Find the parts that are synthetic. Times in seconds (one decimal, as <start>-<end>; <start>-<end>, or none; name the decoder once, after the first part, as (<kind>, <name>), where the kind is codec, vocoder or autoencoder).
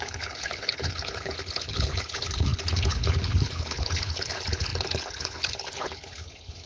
0.0-6.7 (codec, HILCodec)